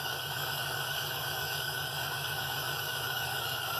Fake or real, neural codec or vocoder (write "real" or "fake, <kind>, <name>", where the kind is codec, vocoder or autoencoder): fake, codec, DAC